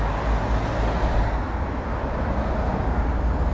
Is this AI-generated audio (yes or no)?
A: no